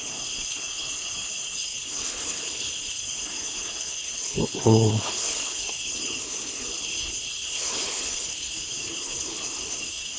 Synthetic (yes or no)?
yes